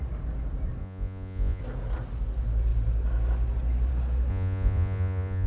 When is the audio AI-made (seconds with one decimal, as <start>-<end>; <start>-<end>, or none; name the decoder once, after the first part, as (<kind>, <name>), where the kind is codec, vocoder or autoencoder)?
0.8-1.6 (vocoder, Vocos); 4.3-5.5